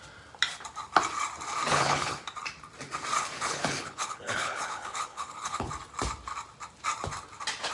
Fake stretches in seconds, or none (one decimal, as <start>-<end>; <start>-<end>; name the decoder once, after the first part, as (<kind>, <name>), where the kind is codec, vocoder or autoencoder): 1.7-2.2 (codec, HILCodec); 3.2-5.7